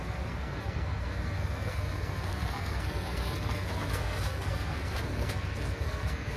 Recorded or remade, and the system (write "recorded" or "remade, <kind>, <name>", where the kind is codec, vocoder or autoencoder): remade, codec, SNAC